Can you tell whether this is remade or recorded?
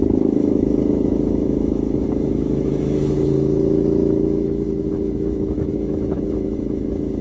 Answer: remade